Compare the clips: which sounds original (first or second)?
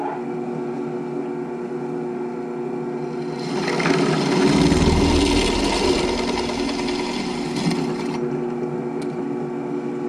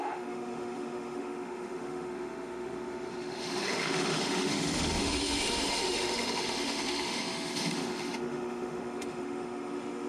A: first